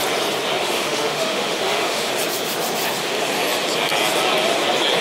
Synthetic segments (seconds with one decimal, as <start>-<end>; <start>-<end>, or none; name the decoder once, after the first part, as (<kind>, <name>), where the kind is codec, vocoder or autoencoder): 0.6-2.1 (autoencoder, DAC-VAE)